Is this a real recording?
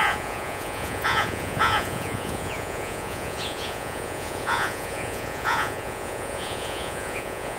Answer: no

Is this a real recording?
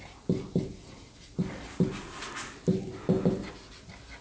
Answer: yes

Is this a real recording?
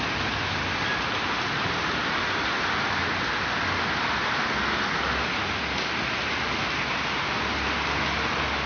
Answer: yes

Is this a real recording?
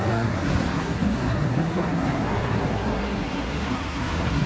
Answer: no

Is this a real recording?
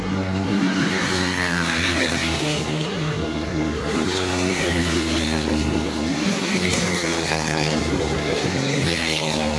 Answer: no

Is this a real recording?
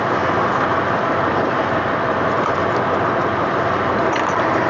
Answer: yes